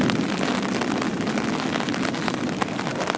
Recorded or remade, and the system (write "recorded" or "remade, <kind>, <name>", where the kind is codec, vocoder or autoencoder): recorded